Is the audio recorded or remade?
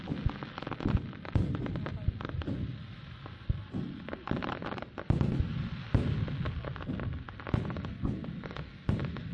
recorded